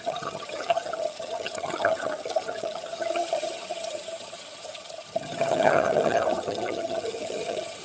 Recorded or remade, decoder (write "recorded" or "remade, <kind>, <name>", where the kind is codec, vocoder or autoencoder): remade, vocoder, HiFi-GAN